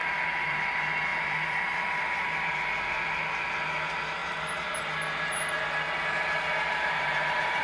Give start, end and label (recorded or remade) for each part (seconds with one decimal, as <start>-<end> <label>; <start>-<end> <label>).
0.0-0.6 remade; 0.6-1.1 recorded; 1.1-2.9 remade; 2.9-6.7 recorded; 6.7-7.6 remade